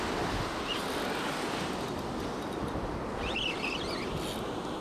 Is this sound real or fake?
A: real